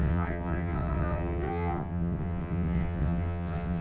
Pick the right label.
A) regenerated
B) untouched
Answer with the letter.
A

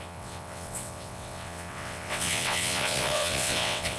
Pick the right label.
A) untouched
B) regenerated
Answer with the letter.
B